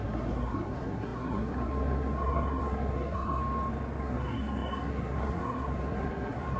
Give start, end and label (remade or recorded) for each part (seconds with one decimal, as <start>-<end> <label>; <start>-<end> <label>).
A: 0.0-3.4 remade; 3.4-4.0 recorded; 4.0-6.6 remade